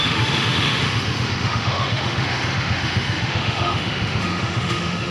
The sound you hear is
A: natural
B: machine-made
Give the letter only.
B